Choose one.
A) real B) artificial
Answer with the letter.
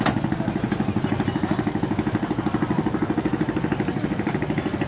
A